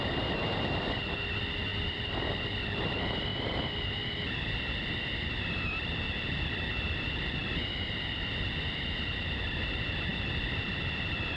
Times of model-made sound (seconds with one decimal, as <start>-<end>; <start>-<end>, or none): none